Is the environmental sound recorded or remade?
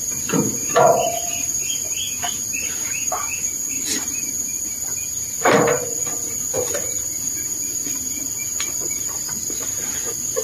remade